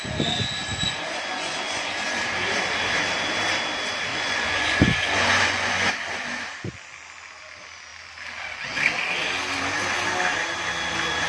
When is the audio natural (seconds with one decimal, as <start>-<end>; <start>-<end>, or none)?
0.0-0.7; 1.9-4.1; 5.9-11.3